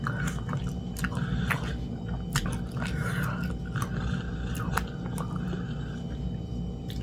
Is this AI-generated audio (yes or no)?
no